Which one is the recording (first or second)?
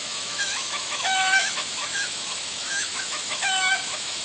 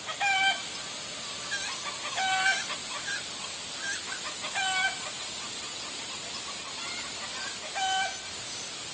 second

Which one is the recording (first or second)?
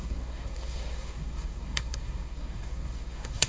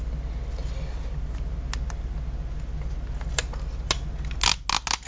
second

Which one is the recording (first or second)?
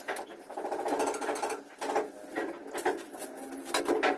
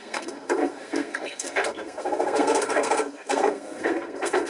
first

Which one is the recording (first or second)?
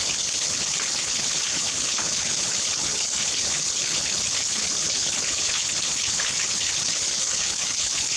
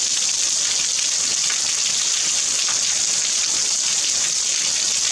second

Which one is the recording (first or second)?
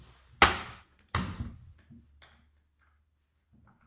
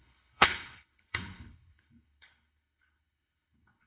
first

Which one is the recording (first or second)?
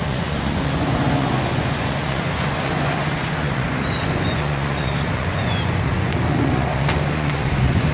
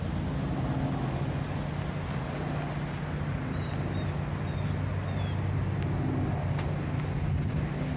second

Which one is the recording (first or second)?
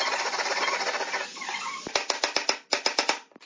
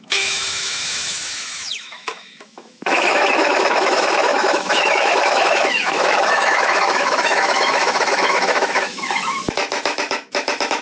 first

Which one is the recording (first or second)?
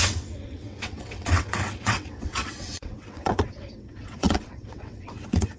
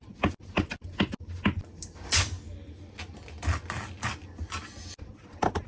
second